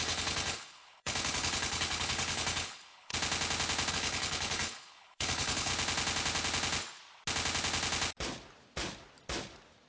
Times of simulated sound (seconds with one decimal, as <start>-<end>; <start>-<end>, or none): 0.0-3.1; 3.9-5.7